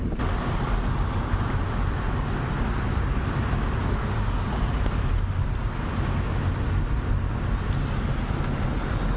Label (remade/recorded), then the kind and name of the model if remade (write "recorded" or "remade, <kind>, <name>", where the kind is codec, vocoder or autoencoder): recorded